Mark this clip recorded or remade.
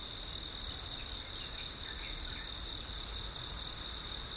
recorded